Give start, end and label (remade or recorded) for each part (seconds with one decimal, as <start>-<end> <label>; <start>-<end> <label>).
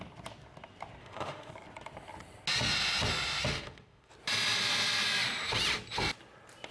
0.0-1.0 recorded; 1.0-1.5 remade; 1.5-3.5 recorded; 3.5-4.1 remade; 4.1-6.7 recorded